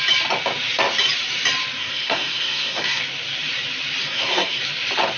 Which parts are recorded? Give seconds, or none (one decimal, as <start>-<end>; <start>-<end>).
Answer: 0.0-1.8; 3.0-4.0; 4.6-5.2